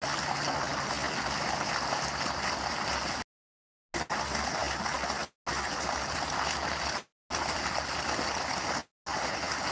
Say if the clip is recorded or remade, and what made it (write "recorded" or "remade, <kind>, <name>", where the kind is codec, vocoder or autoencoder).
recorded